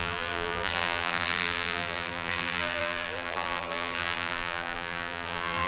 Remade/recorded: remade